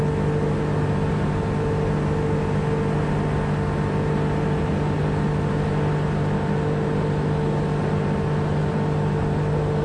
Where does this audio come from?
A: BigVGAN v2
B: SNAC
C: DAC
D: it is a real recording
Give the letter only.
D